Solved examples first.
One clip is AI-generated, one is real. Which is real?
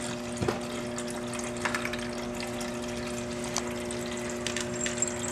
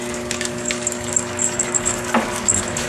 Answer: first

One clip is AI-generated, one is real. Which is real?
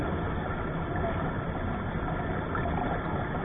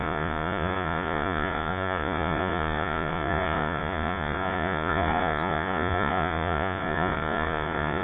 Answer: first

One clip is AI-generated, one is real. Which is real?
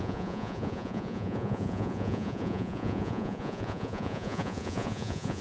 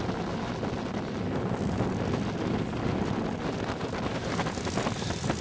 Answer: second